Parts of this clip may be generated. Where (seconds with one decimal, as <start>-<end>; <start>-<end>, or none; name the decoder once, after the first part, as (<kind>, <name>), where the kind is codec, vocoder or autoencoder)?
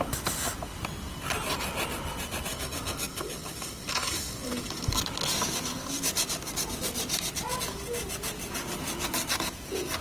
2.5-5.0 (codec, DAC)